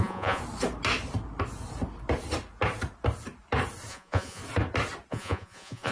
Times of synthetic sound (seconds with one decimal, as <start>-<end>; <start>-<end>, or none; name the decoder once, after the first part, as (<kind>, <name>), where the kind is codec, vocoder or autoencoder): 0.0-0.4 (vocoder, Vocos); 3.9-4.4; 5.1-5.9